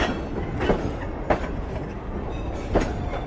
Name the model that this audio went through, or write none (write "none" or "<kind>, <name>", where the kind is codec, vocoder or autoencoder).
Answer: none